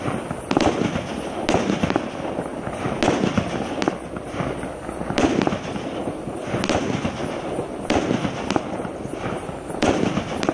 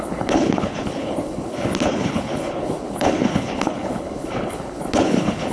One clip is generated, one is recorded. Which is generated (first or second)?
second